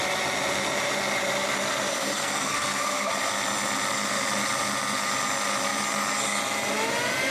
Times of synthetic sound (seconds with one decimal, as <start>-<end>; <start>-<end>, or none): 1.9-3.1